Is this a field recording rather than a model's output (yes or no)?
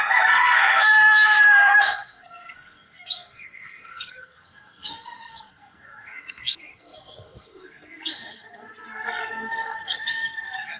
no